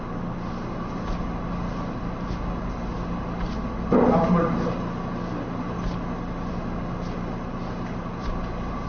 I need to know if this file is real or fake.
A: real